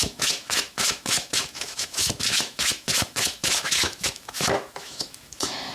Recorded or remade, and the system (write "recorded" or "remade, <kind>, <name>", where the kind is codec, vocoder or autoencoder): remade, autoencoder, DAC-VAE